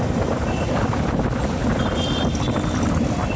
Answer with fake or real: real